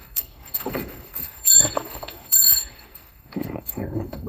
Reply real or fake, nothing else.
fake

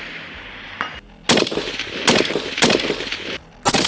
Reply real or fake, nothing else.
real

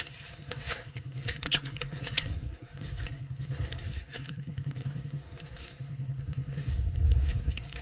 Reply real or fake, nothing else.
fake